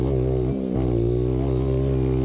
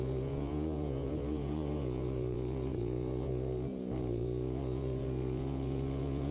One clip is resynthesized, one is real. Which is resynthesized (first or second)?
second